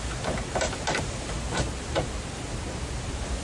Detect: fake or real real